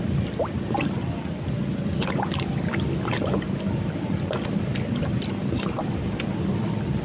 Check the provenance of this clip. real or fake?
real